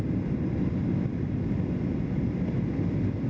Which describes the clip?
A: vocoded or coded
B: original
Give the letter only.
B